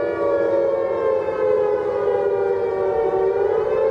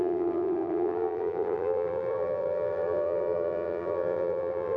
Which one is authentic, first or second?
first